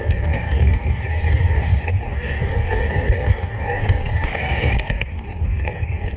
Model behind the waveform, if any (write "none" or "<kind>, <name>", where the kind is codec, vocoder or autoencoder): codec, DAC